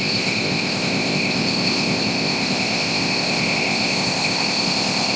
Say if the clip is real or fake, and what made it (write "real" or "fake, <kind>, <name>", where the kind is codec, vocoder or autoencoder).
fake, codec, ZipCodec